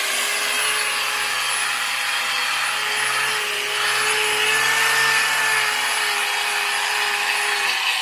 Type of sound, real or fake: real